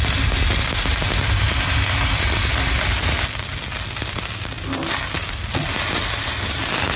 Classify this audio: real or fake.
real